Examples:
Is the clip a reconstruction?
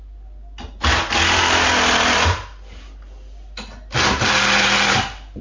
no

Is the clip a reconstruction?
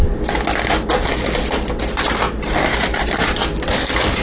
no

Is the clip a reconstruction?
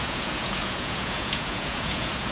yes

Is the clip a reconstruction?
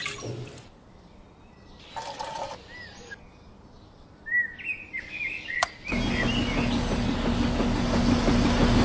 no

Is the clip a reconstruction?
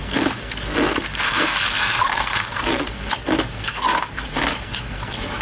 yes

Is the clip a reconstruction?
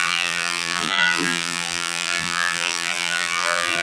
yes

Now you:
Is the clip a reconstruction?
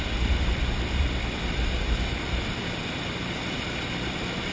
yes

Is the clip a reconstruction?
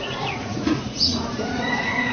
yes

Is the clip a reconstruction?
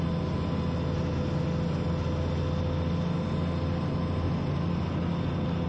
no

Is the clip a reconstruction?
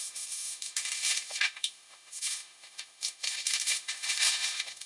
yes